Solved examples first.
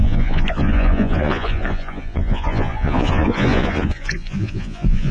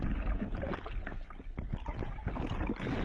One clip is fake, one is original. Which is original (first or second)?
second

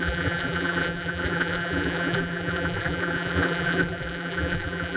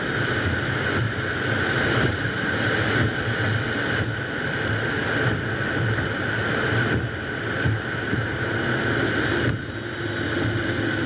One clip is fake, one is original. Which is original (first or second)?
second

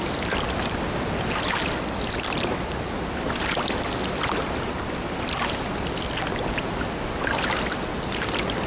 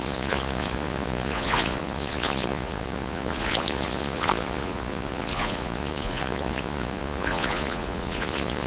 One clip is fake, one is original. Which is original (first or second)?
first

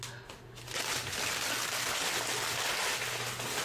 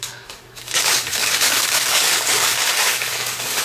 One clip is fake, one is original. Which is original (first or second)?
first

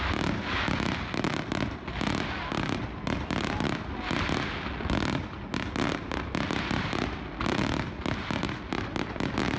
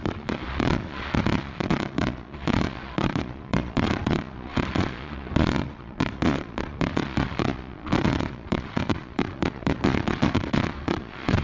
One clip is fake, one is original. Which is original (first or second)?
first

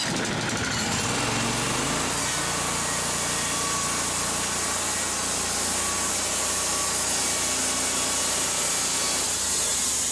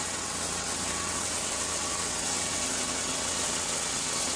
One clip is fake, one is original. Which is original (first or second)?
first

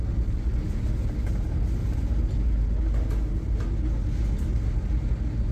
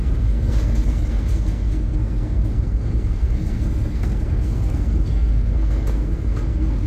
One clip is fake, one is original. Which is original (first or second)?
first